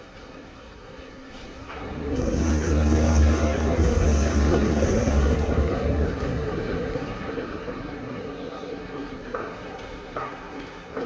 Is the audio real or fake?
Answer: fake